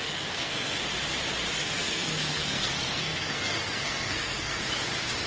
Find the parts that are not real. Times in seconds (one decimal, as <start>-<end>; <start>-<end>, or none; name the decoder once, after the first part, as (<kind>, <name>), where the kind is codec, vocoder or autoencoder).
0.0-0.8 (codec, SNAC); 1.6-4.6

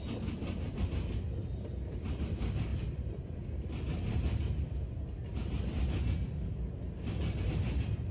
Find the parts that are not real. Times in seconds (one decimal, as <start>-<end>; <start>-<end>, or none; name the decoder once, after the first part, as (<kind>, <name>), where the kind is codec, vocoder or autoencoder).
none

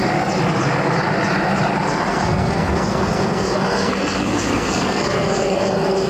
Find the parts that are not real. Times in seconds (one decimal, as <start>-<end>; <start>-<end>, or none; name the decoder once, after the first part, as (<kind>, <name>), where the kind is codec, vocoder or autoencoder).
2.1-6.1 (codec, SNAC)

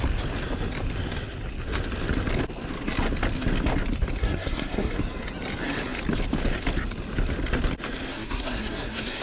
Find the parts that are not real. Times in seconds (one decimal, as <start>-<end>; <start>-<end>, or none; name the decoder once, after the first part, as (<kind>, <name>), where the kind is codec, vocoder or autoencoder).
4.2-5.0 (codec, SNAC); 8.1-9.2

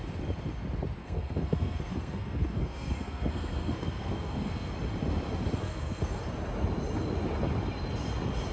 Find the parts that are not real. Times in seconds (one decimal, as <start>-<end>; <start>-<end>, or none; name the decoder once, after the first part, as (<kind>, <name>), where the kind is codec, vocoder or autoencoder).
1.0-4.7 (codec, SNAC); 5.6-6.2

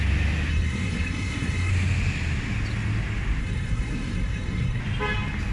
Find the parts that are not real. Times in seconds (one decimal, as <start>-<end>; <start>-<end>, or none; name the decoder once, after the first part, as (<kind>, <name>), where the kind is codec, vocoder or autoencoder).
0.5-1.7 (codec, SNAC); 3.4-4.8